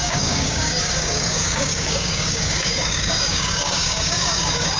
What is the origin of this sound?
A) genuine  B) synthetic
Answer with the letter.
B